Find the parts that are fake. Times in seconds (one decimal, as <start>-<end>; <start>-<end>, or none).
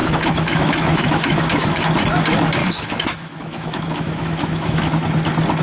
0.0-1.9; 2.6-4.9